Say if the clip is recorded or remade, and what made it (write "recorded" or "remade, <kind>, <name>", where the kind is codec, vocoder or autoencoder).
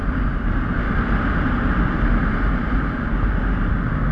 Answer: recorded